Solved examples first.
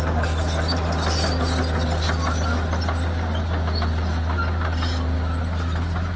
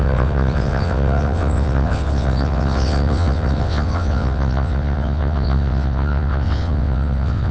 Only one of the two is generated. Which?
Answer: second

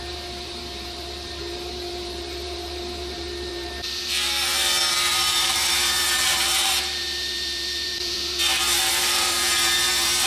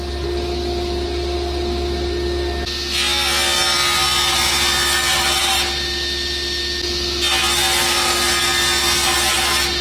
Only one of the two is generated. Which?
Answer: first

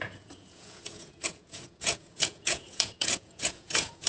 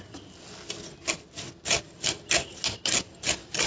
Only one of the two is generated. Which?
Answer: first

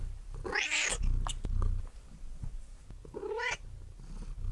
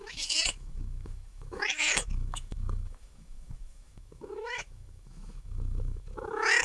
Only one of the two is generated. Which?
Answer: second